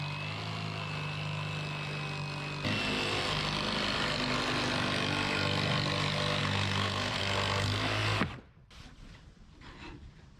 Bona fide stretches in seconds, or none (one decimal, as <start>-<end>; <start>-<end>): 0.0-6.4; 7.2-10.4